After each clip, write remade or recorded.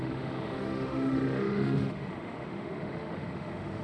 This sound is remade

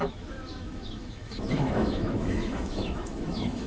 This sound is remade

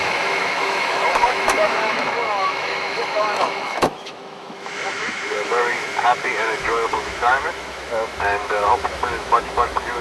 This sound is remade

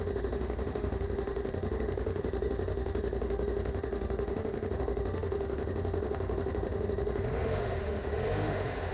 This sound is remade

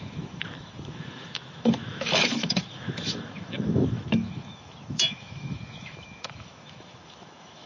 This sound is remade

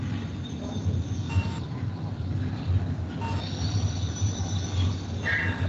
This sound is recorded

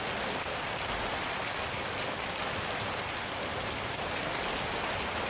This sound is recorded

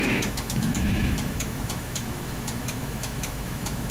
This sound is remade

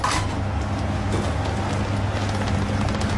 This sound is recorded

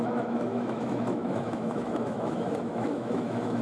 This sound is remade